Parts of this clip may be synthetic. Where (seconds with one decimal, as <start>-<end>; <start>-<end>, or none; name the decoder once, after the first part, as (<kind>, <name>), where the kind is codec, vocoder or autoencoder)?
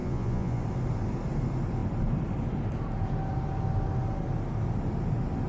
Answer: 0.0-0.6 (vocoder, Vocos)